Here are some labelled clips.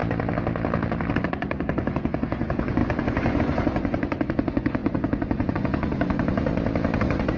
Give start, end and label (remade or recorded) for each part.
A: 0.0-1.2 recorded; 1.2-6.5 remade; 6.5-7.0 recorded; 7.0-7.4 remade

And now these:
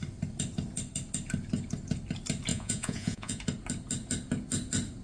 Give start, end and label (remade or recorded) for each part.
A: 0.0-2.5 recorded; 2.5-3.4 remade; 3.4-5.0 recorded

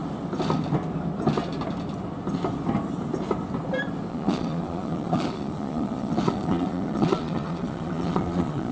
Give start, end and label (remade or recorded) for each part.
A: 0.0-4.1 recorded; 4.1-8.7 remade

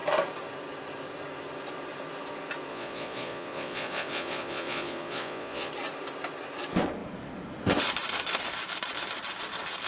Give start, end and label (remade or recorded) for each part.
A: 0.0-2.7 recorded; 2.7-5.7 remade; 5.7-9.9 recorded

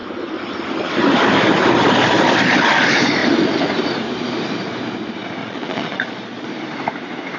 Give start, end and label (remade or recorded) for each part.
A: 0.0-5.4 recorded; 5.4-6.5 remade; 6.5-7.4 recorded

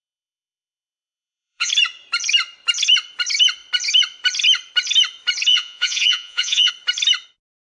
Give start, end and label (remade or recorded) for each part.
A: 0.0-1.7 remade; 1.7-5.5 recorded; 5.5-6.7 remade; 6.7-7.7 recorded